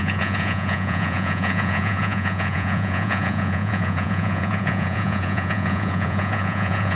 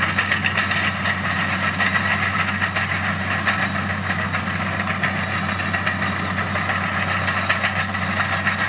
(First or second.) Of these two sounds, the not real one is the first